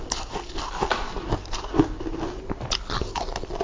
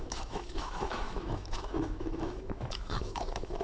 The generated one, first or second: second